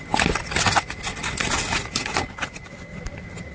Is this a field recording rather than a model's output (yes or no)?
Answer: yes